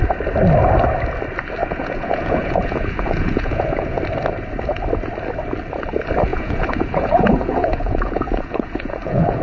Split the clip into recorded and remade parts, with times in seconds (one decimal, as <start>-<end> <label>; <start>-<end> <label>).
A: 0.0-1.6 recorded; 1.6-4.0 remade; 4.0-6.3 recorded; 6.3-9.4 remade